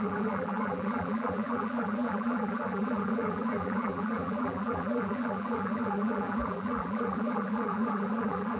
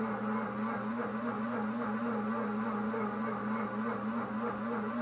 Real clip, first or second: second